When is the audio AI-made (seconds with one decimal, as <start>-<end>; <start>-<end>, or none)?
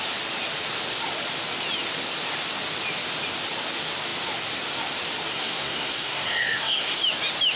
5.3-7.0